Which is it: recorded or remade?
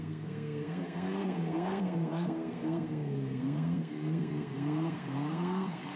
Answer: remade